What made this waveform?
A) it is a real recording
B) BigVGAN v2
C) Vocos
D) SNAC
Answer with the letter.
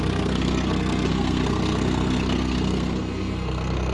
D